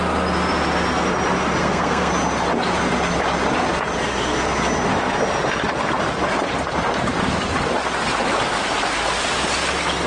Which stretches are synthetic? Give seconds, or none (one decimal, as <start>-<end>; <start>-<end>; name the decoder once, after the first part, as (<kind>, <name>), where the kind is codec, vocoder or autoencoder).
1.6-2.1 (codec, SNAC)